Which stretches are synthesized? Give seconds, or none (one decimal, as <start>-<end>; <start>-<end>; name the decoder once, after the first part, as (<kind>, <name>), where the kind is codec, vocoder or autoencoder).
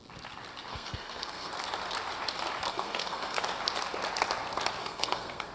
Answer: 0.7-1.5 (codec, SNAC); 2.7-3.4; 4.8-5.5